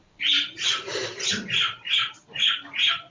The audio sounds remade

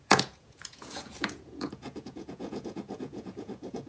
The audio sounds remade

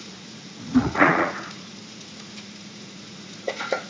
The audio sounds remade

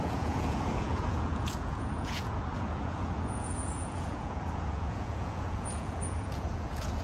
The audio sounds remade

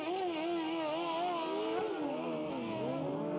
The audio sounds recorded